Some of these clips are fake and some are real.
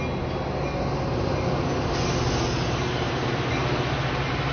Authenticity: real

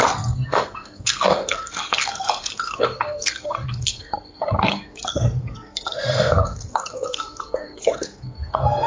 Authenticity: fake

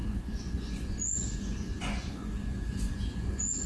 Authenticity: fake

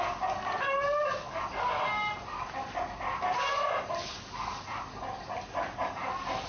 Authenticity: real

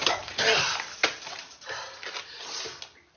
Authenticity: real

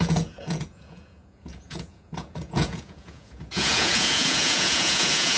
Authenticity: fake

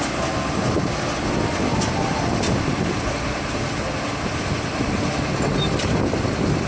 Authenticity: real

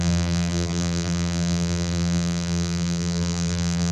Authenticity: fake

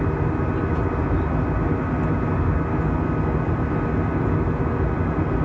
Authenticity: real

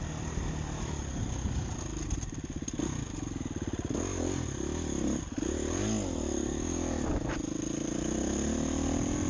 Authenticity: real